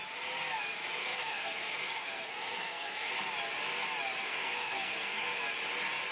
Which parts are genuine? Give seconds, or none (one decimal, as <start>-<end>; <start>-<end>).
0.0-1.0; 3.1-4.2; 5.4-6.1